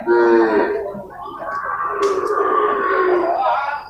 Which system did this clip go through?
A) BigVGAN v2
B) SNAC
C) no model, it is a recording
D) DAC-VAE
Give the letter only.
C